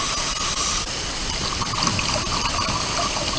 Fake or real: real